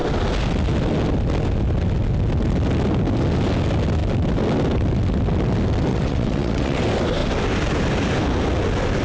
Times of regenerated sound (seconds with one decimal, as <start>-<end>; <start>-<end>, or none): 5.9-6.8